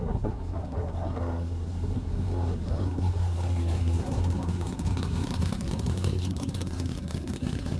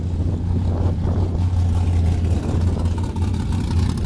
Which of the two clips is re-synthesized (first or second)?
first